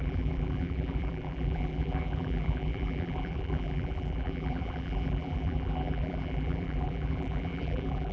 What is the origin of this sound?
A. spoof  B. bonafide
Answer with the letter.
A